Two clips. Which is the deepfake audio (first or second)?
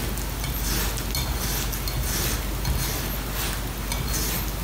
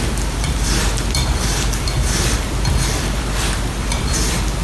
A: second